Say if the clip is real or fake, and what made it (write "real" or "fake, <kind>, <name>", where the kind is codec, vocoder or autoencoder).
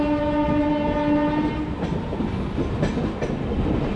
real